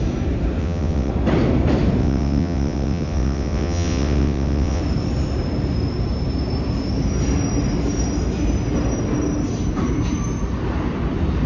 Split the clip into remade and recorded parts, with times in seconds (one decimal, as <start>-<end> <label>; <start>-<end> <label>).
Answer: 0.0-0.6 recorded; 0.6-1.1 remade; 1.1-2.0 recorded; 2.0-4.8 remade; 4.8-11.5 recorded

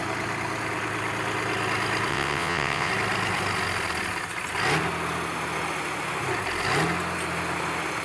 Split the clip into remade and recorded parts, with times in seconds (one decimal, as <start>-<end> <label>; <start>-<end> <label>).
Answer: 0.0-2.1 recorded; 2.1-2.9 remade; 2.9-8.0 recorded

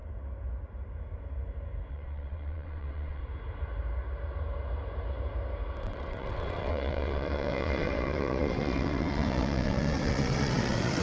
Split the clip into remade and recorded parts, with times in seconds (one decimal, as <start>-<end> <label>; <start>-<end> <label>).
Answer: 0.0-1.9 recorded; 1.9-3.2 remade; 3.2-5.8 recorded; 5.8-11.0 remade

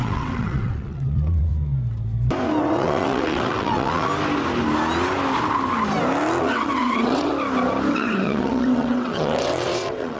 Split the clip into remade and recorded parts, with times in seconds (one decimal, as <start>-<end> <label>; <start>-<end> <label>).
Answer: 0.0-1.5 remade; 1.5-2.6 recorded; 2.6-4.1 remade; 4.1-6.4 recorded; 6.4-7.3 remade; 7.3-7.9 recorded; 7.9-10.2 remade